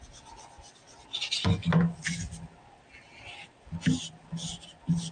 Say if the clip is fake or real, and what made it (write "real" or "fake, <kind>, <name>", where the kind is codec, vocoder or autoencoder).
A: real